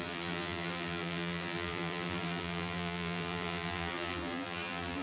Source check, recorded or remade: remade